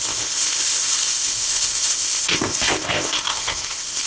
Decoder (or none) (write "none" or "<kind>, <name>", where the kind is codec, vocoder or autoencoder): codec, ZipCodec